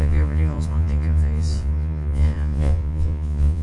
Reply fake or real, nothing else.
fake